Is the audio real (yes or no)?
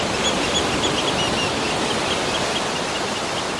yes